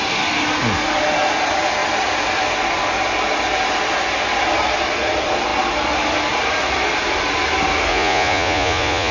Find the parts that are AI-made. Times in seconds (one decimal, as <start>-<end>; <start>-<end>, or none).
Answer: 7.9-9.1

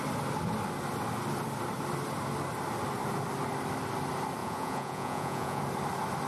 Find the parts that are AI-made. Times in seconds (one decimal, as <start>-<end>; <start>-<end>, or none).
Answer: 4.4-5.6

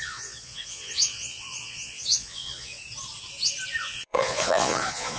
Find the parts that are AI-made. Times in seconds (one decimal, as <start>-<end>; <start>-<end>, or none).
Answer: 0.0-2.8; 3.8-5.2

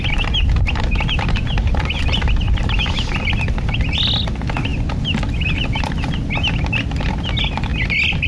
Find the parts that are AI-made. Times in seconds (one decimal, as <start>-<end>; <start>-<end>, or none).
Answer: none

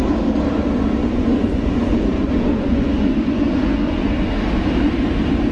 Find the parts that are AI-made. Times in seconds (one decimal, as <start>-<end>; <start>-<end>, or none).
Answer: 1.0-4.3

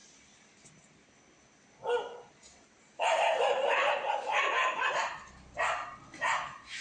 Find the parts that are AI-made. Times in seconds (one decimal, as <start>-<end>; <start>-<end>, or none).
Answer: none

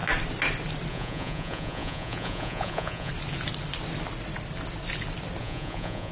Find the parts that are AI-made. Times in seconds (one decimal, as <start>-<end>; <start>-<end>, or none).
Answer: 0.9-3.1; 5.4-6.1